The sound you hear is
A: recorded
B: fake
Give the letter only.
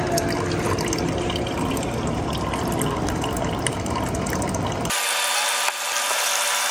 A